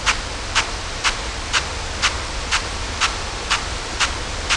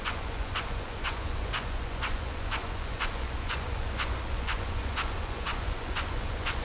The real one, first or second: first